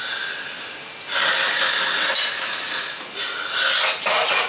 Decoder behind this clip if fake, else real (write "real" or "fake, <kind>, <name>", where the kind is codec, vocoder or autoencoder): real